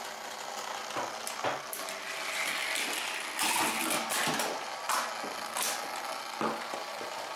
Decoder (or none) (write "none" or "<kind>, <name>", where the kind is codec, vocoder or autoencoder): none